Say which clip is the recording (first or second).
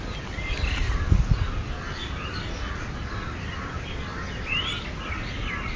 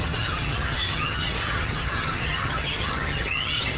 first